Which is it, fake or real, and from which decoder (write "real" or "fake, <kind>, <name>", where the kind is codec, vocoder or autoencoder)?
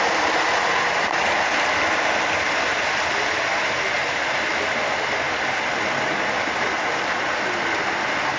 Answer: real